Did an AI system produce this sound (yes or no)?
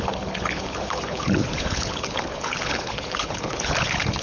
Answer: yes